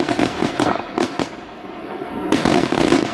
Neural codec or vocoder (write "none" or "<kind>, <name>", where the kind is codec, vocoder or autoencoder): codec, SNAC